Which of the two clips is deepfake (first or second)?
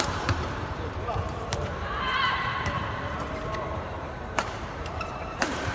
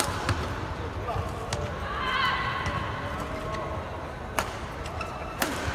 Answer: first